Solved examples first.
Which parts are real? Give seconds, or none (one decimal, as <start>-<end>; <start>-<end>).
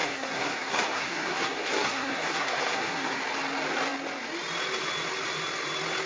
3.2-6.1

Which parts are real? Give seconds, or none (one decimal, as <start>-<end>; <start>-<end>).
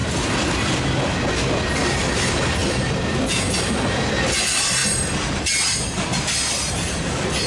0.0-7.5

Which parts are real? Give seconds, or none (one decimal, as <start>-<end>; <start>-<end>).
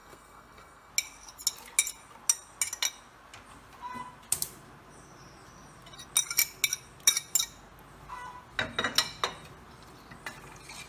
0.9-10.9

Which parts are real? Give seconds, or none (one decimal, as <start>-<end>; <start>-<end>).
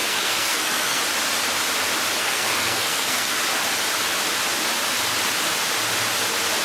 1.0-2.2; 3.4-6.6